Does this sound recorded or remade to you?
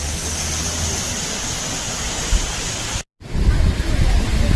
recorded